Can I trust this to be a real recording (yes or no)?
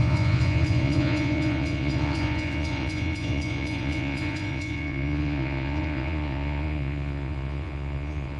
no